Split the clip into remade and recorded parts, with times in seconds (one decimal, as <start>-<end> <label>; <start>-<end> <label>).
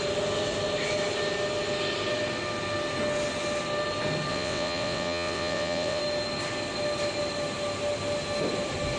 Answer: 0.0-4.3 recorded; 4.3-6.0 remade; 6.0-9.0 recorded